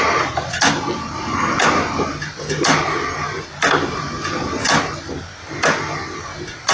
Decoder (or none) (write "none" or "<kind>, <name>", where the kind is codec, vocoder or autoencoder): none